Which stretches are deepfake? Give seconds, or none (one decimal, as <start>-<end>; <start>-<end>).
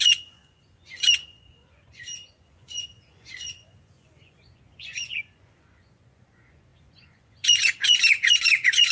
0.0-8.9